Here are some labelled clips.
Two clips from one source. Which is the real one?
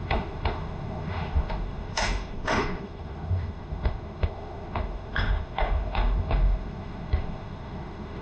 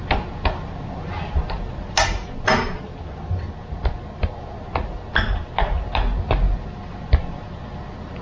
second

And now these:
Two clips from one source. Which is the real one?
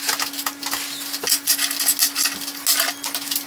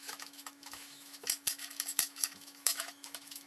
first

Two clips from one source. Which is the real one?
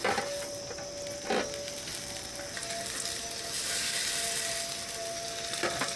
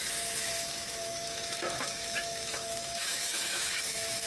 first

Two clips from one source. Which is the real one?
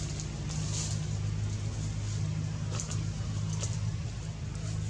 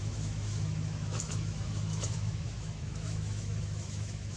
first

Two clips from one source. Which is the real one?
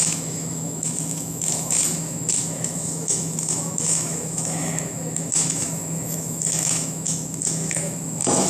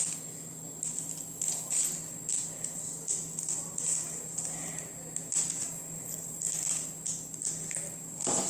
second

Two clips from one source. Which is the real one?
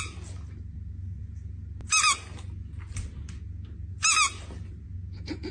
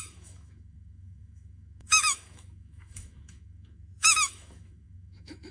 first